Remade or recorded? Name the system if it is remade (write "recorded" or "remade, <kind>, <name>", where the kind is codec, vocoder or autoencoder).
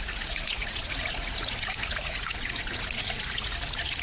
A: remade, vocoder, Vocos